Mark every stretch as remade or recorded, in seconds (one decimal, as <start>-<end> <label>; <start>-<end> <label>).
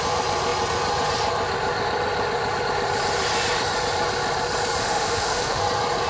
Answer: 0.0-4.8 recorded; 4.8-5.6 remade; 5.6-6.1 recorded